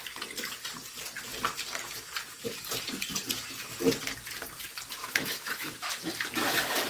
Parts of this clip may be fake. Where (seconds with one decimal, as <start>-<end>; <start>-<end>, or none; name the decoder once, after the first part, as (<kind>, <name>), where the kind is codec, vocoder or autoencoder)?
5.0-6.1 (autoencoder, DAC-VAE)